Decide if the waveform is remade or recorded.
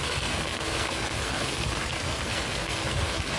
remade